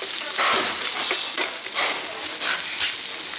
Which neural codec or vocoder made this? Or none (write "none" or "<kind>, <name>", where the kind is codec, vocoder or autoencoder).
none